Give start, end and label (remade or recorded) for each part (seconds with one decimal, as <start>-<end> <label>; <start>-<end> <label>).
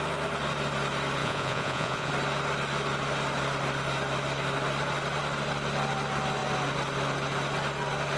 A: 0.0-1.2 recorded; 1.2-2.1 remade; 2.1-8.2 recorded